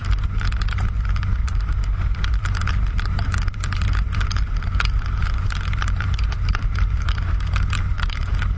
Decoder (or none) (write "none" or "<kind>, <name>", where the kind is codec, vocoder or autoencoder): vocoder, BigVGAN v2